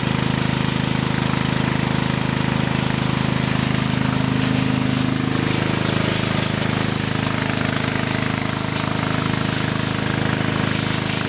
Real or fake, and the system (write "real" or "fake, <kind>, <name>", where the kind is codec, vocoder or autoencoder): real